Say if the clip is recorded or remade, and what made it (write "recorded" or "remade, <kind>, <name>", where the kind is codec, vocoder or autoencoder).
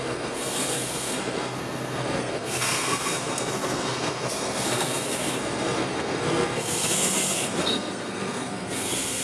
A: remade, codec, SNAC